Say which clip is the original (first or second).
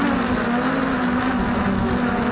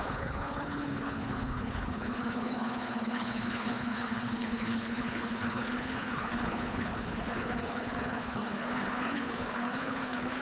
first